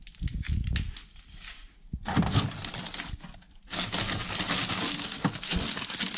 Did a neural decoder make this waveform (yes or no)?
no